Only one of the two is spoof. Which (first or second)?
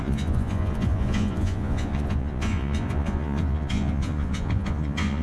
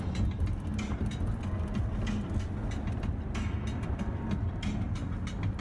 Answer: first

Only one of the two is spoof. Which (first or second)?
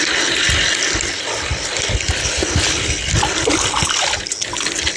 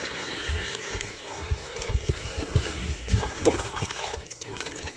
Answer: second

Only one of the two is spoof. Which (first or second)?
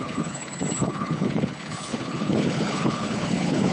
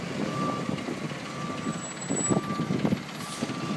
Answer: first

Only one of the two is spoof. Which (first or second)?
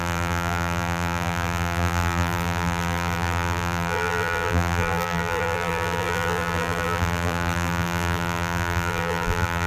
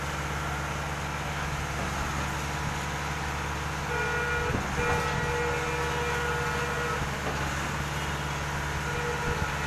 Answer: first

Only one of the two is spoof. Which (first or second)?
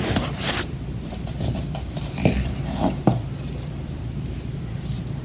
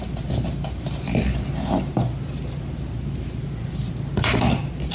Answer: first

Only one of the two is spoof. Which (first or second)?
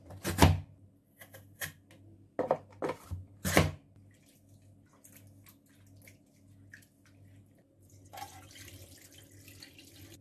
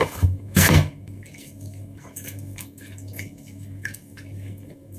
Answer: second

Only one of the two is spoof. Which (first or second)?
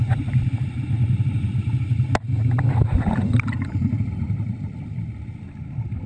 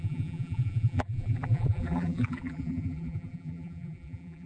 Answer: second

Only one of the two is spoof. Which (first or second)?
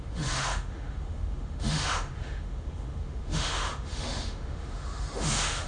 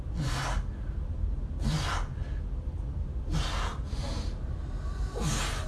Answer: first